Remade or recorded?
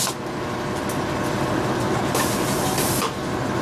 recorded